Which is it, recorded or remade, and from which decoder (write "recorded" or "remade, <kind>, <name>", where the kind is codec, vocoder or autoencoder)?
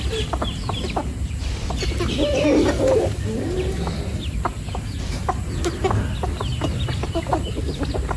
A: recorded